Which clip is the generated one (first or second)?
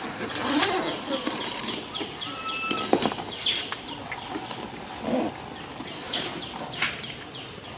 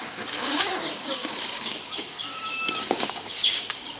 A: second